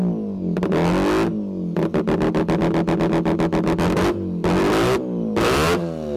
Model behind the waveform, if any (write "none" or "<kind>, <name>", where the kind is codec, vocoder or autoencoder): none